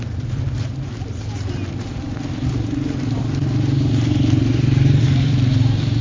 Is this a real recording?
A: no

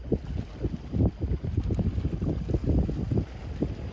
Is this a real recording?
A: yes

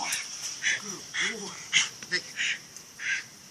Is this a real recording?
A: no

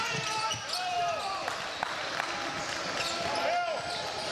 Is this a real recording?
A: yes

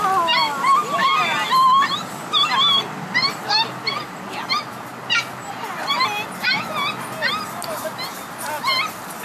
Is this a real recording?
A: yes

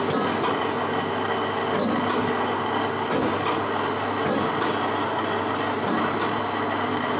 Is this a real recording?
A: yes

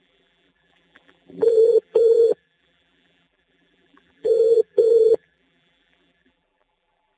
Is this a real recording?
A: no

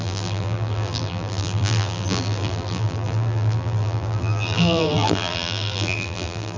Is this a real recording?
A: no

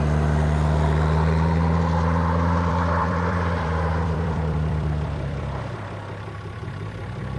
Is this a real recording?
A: no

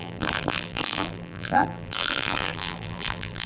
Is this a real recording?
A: no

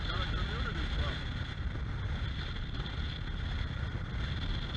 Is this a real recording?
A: yes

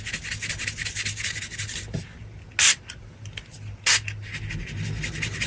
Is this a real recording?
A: yes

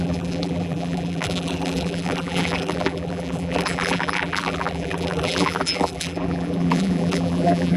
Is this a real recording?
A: no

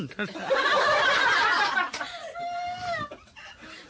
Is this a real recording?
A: yes